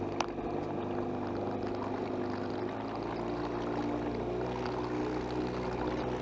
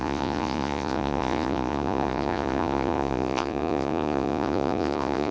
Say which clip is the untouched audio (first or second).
first